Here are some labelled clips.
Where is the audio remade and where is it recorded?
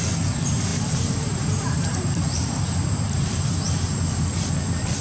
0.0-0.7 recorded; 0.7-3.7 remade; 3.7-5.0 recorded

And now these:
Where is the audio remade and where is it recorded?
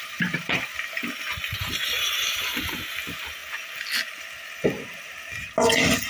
0.0-0.7 remade; 0.7-1.6 recorded; 1.6-3.4 remade; 3.4-6.1 recorded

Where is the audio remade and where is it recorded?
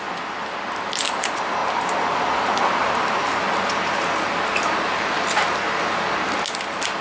0.0-7.0 recorded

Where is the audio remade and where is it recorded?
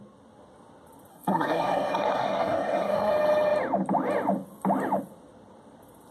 0.0-1.1 recorded; 1.1-3.1 remade; 3.1-6.1 recorded